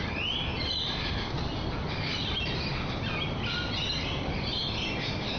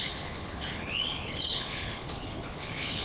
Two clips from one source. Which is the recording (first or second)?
first